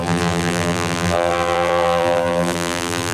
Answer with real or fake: fake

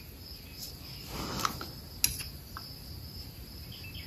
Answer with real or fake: real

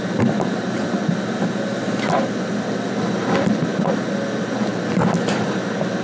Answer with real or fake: real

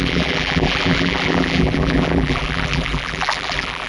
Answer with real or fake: fake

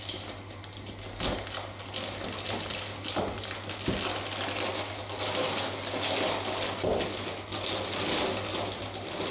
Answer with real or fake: real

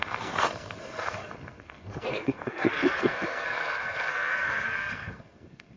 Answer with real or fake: fake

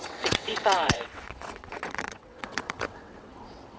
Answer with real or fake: fake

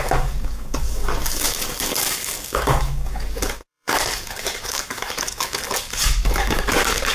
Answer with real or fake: fake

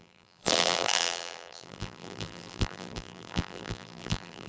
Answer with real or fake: fake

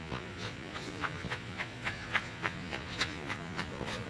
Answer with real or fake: fake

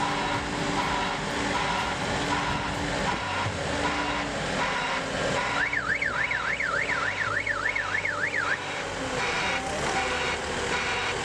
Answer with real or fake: real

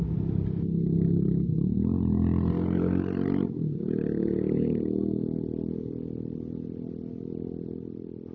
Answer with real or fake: real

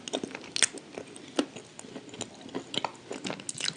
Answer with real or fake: real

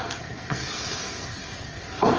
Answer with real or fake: fake